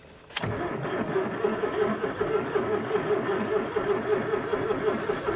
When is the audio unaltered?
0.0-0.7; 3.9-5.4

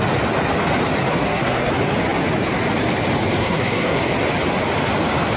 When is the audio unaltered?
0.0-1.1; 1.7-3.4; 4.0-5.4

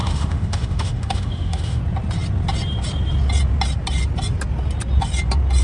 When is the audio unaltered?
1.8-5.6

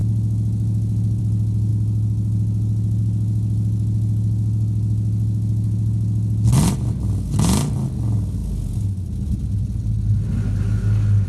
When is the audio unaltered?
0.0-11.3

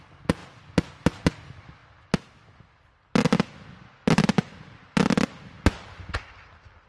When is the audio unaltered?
0.0-6.9

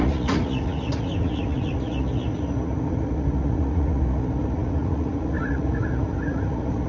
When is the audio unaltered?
none

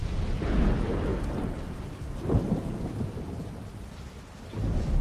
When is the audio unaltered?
0.7-1.1; 4.1-5.0

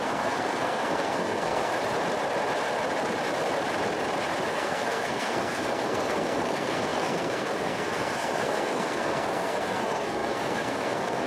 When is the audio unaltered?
1.7-4.5